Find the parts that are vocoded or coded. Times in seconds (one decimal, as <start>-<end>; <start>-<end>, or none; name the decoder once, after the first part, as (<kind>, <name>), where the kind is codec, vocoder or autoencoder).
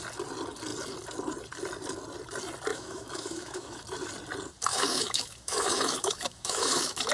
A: 2.7-3.8 (autoencoder, DAC-VAE); 4.7-7.1